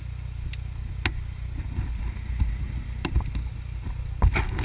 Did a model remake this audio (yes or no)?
no